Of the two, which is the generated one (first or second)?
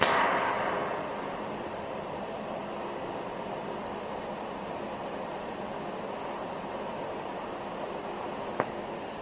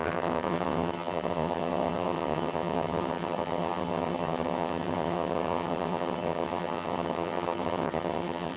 second